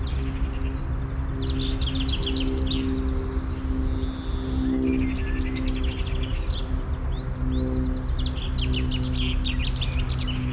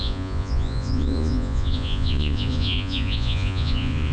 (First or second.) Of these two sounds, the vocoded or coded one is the second